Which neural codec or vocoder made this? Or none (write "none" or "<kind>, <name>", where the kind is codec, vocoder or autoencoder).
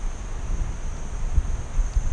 none